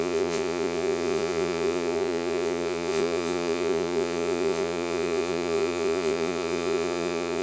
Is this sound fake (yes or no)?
yes